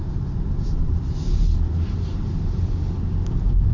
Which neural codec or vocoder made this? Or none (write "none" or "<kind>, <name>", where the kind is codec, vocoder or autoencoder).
none